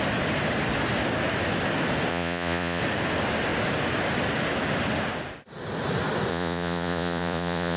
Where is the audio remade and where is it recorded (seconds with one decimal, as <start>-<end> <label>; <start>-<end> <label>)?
0.0-2.1 recorded; 2.1-2.8 remade; 2.8-6.3 recorded; 6.3-7.8 remade